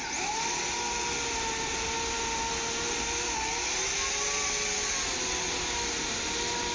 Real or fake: real